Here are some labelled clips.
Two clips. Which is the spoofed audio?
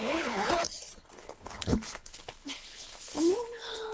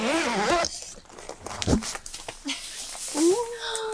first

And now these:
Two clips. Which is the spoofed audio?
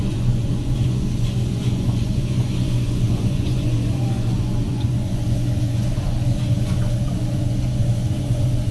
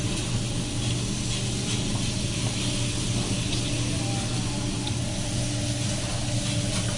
first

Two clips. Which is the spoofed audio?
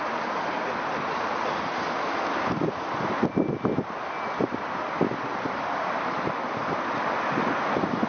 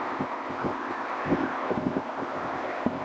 second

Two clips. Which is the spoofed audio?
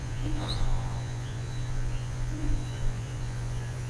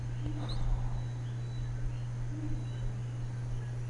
first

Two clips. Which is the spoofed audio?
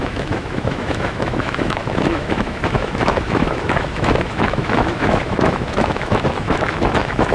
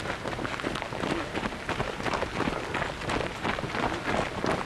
first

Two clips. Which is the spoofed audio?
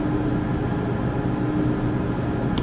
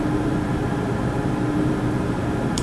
second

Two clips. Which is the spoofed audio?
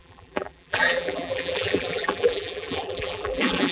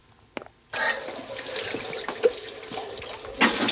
first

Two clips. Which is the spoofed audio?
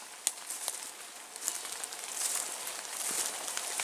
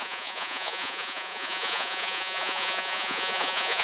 second